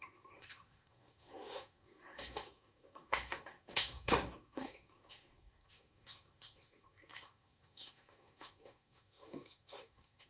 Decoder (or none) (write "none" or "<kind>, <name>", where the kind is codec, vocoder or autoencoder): codec, SNAC